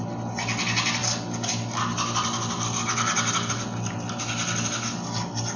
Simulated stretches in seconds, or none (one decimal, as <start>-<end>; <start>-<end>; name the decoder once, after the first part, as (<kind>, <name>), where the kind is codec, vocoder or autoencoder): none